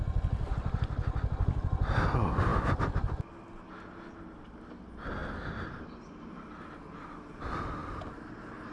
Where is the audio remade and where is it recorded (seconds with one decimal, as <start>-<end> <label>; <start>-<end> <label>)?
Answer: 0.0-8.7 recorded